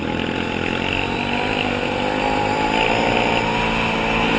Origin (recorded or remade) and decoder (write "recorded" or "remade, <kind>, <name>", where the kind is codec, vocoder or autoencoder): recorded